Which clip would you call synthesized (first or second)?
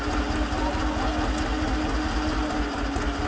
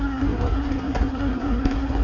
second